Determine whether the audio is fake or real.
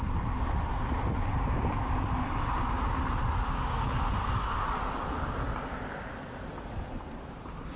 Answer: real